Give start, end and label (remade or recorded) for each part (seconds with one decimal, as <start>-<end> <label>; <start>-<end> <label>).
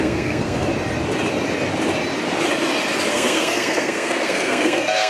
0.0-0.7 remade; 0.7-3.1 recorded; 3.1-5.1 remade